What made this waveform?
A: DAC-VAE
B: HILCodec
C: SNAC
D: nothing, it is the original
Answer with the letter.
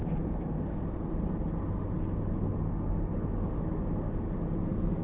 D